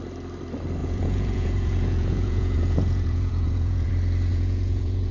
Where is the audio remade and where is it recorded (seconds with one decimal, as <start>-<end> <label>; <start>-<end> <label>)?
0.0-0.8 recorded; 0.8-3.9 remade; 3.9-4.3 recorded; 4.3-5.1 remade